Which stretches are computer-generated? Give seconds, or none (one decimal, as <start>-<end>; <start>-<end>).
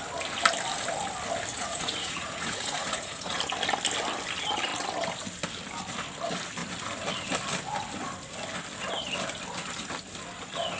1.5-3.4